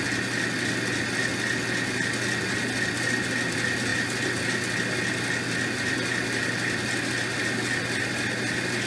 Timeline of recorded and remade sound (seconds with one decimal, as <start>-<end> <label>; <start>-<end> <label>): 0.0-8.9 recorded